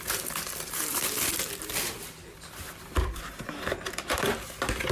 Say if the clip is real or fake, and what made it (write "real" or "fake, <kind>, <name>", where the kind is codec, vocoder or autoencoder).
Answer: fake, vocoder, BigVGAN v2